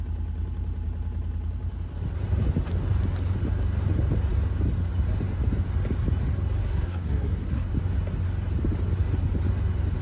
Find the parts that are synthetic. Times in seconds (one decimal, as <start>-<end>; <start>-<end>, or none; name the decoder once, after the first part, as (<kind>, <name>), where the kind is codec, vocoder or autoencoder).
6.6-7.7 (codec, SNAC)